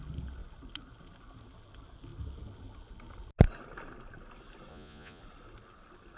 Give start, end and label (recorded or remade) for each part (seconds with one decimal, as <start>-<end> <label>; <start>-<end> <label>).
0.0-4.7 recorded; 4.7-5.2 remade; 5.2-6.2 recorded